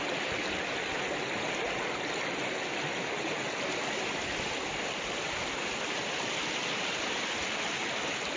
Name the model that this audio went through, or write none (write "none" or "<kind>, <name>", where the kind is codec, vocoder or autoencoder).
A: none